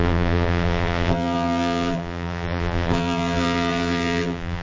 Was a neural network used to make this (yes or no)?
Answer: yes